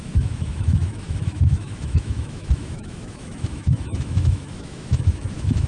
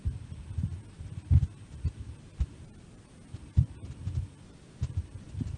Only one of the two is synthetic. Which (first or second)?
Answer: first